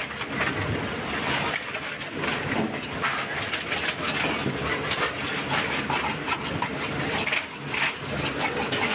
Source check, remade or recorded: recorded